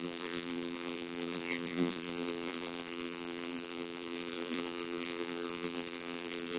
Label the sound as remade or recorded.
remade